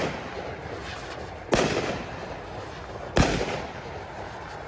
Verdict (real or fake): real